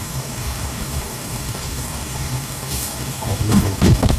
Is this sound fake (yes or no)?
yes